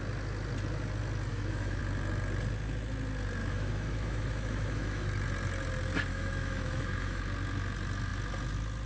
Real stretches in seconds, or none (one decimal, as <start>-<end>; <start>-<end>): 0.0-1.3; 1.8-3.4; 5.1-6.1; 7.2-8.9